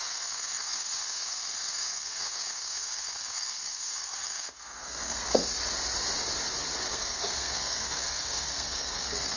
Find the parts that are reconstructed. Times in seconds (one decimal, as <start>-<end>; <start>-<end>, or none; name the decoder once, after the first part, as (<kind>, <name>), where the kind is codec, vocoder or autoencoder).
0.0-5.4 (codec, SNAC); 6.9-9.4